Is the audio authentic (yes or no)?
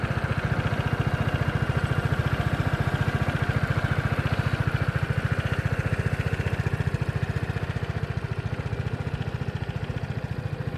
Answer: yes